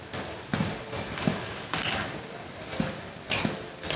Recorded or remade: recorded